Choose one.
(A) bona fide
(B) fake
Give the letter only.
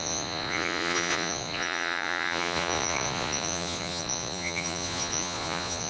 B